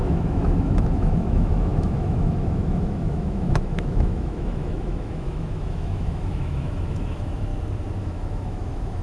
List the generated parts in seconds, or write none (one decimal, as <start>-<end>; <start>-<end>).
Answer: 0.0-7.5; 8.0-9.0